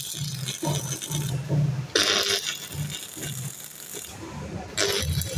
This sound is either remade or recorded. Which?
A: recorded